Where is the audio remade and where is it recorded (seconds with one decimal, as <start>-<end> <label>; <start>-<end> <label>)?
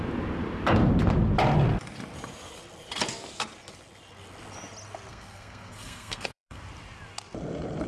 0.0-5.1 recorded; 5.1-6.6 remade; 6.6-7.9 recorded